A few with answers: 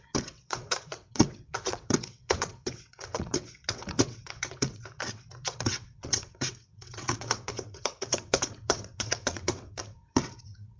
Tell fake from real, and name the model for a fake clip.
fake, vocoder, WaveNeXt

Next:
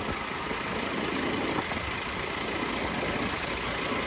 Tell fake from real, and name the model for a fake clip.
real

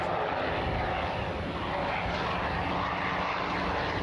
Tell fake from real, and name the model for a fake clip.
real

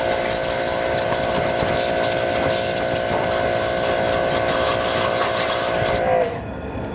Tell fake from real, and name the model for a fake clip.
real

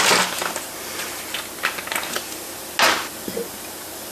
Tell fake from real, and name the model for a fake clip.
real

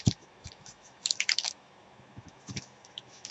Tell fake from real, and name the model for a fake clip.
fake, autoencoder, DAC-VAE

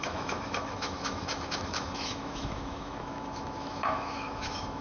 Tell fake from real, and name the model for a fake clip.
fake, autoencoder, DAC-VAE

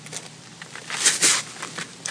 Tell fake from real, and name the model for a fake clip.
real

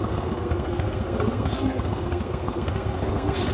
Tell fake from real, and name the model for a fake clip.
fake, codec, SNAC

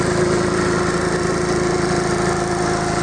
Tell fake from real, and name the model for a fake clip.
real